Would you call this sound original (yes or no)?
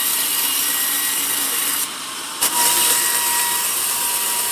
no